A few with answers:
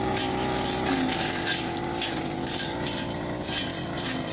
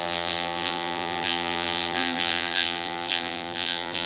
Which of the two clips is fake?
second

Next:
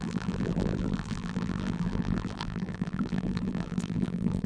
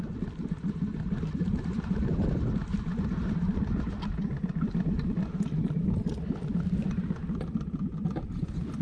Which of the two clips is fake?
first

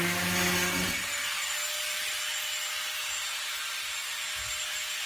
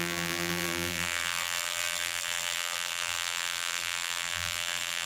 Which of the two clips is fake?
second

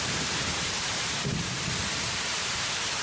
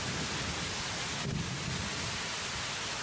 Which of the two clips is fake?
first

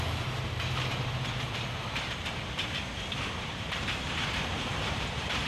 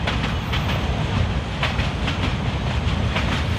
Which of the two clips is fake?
first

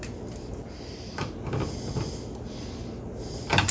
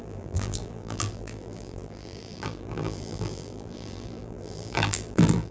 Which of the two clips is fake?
second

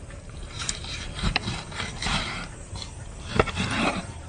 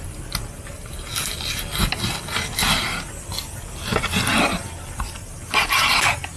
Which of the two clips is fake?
first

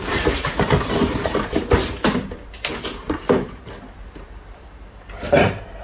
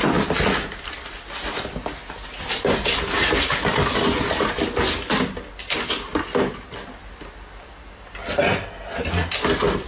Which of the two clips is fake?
first